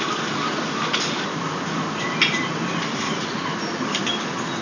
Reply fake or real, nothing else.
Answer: real